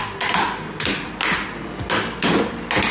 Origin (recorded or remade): recorded